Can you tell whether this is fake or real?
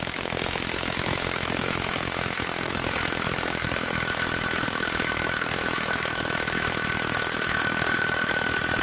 fake